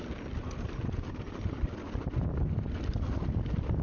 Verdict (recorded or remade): remade